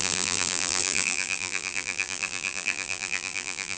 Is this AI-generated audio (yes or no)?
yes